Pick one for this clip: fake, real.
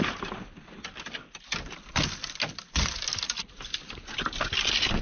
real